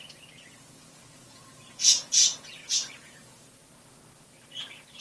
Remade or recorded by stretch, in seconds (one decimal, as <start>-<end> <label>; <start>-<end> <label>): 0.0-3.6 remade; 3.6-5.0 recorded